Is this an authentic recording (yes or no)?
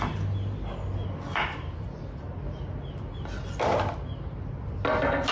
yes